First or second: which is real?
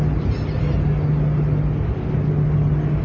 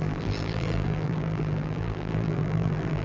first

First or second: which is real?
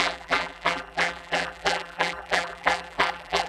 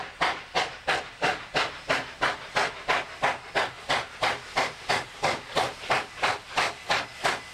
second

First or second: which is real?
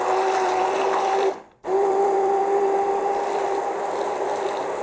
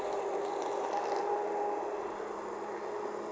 second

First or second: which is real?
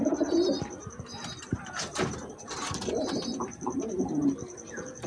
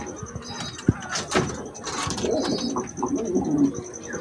second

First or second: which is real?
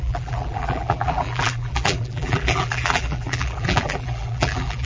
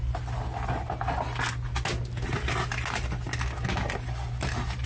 second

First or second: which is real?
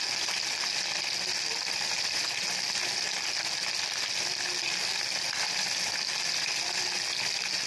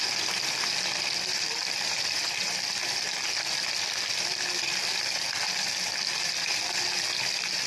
first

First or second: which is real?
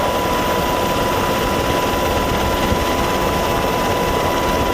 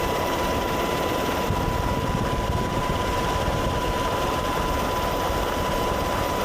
first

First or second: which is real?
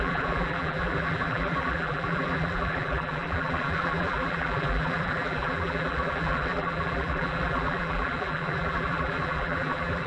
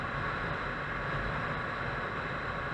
second